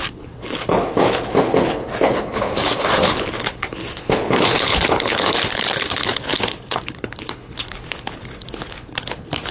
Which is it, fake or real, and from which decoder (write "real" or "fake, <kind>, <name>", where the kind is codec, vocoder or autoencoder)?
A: fake, codec, HILCodec